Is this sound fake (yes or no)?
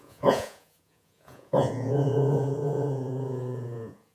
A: yes